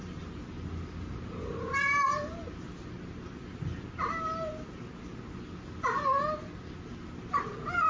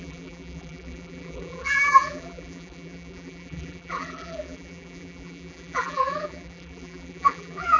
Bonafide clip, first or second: first